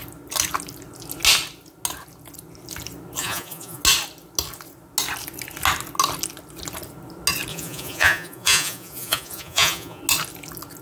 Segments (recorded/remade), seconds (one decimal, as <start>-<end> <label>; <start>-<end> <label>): 0.0-3.2 recorded; 3.2-3.8 remade; 3.8-7.5 recorded; 7.5-10.0 remade; 10.0-10.8 recorded